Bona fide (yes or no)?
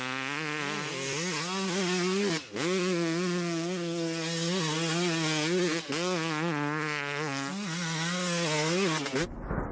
yes